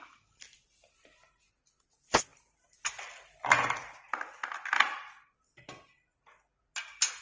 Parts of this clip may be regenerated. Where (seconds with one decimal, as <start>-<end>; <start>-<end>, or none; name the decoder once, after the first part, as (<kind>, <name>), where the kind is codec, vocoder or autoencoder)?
none